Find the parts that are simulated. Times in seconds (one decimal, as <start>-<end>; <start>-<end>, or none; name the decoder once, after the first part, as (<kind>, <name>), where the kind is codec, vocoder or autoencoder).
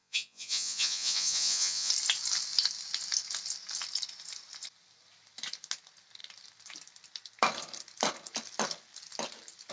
0.0-1.9 (vocoder, Vocos)